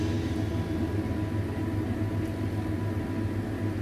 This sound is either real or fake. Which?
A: real